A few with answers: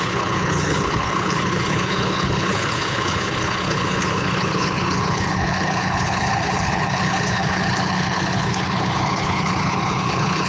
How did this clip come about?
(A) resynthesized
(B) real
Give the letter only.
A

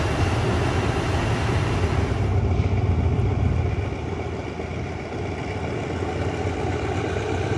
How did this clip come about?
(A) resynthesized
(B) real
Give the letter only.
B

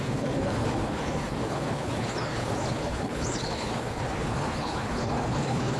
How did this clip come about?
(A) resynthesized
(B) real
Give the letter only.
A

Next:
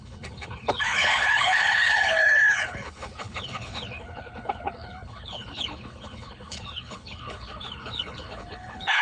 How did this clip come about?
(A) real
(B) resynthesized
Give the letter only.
B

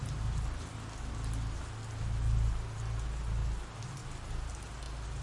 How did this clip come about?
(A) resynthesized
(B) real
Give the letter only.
B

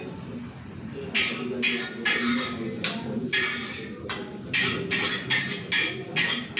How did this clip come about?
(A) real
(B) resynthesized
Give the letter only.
A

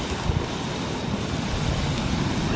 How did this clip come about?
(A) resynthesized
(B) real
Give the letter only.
B